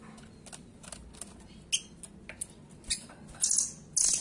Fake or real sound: real